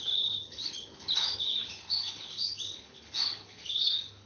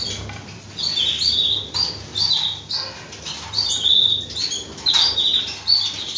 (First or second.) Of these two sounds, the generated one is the first